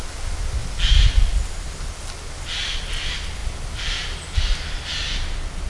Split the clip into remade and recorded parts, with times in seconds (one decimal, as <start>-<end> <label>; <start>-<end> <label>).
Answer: 0.0-5.7 recorded